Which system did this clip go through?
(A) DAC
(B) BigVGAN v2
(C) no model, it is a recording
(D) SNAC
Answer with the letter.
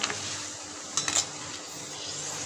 C